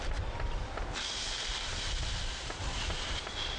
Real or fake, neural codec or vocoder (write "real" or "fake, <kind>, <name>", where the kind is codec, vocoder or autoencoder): real